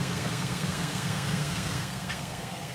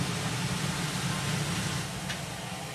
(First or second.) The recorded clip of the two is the second